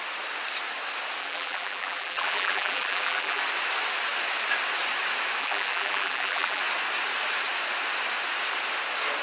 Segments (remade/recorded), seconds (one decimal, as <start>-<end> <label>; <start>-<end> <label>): 0.0-1.2 recorded; 1.2-3.4 remade; 3.4-5.4 recorded; 5.4-6.6 remade; 6.6-9.2 recorded